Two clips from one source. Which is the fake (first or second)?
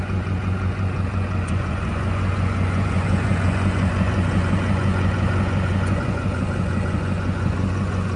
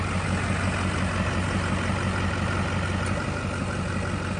first